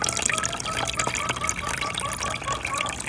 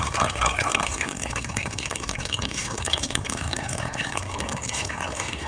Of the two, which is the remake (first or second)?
second